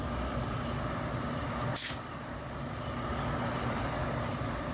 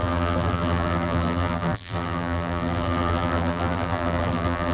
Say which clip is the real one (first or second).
first